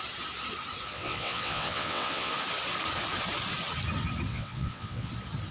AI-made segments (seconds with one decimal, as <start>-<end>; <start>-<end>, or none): 0.9-2.3; 4.3-5.1